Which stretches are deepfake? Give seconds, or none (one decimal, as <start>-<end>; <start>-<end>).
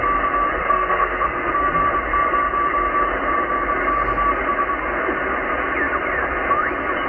0.6-1.5